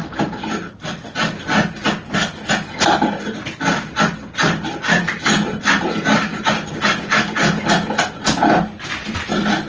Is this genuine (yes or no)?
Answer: yes